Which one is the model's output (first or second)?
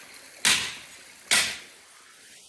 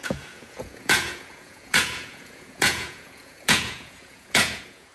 second